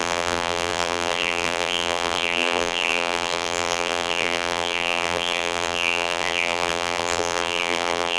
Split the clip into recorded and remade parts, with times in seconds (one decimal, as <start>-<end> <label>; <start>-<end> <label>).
0.0-8.2 remade

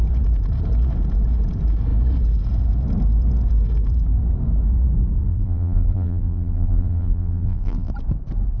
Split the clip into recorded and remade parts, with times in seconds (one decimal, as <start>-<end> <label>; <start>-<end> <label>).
0.0-5.3 recorded; 5.3-7.9 remade; 7.9-8.6 recorded

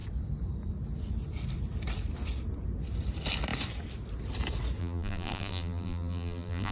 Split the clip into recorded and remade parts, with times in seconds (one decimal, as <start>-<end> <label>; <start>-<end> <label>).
0.0-4.8 recorded; 4.8-6.7 remade

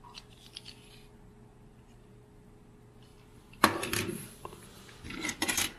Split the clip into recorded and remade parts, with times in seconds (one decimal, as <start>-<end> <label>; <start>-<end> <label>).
0.0-3.1 recorded; 3.1-5.8 remade